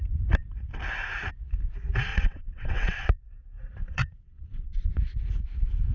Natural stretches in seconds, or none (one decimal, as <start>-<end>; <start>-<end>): 0.0-2.1; 3.2-3.8; 4.9-5.9